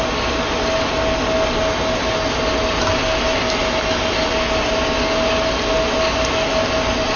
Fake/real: real